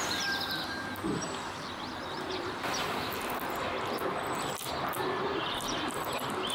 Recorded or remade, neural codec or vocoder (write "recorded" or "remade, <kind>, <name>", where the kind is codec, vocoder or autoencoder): recorded